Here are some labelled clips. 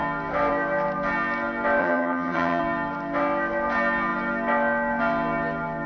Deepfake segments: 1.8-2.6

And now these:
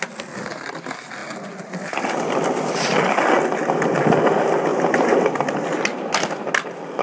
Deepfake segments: none

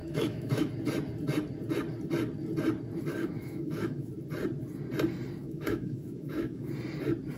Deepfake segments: 0.0-0.7; 3.2-4.1; 5.4-6.7

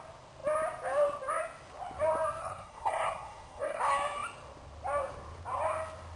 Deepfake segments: 2.4-3.8